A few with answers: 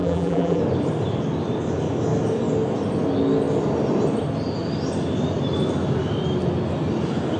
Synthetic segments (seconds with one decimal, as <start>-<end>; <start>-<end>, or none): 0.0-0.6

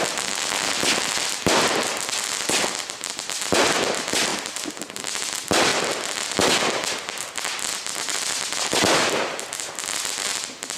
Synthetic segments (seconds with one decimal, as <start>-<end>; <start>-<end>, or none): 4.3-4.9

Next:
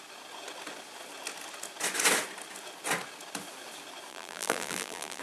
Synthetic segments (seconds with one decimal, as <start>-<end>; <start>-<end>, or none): 4.1-5.2

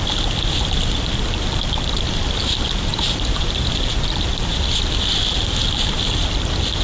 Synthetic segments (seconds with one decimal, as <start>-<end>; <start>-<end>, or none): 2.9-4.2

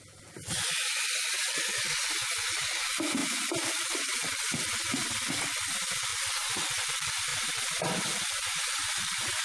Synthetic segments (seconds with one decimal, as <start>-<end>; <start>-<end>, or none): 7.3-7.8

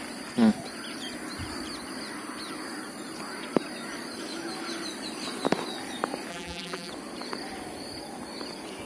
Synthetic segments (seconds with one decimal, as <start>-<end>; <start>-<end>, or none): 6.3-6.9

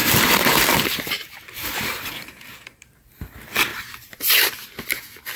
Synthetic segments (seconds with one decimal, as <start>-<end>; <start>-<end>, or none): 0.0-3.2; 3.7-4.2

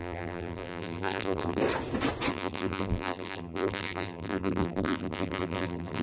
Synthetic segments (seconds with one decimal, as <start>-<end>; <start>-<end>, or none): 0.0-1.6; 2.3-6.0